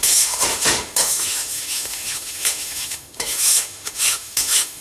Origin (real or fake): fake